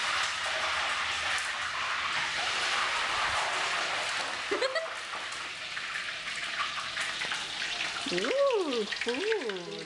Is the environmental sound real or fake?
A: real